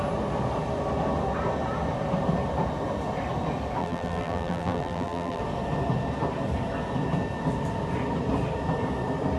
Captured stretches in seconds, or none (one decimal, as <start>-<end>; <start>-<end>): 0.0-3.8; 5.4-9.4